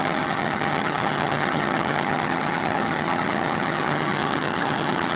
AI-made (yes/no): yes